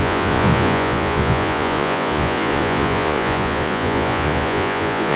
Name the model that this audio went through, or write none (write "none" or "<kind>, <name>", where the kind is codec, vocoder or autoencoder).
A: vocoder, Vocos